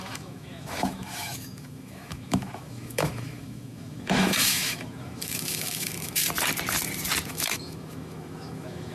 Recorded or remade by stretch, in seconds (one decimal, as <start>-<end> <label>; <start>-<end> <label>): 0.0-6.2 remade; 6.2-7.3 recorded; 7.3-8.9 remade